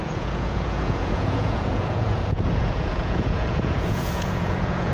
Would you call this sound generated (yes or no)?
yes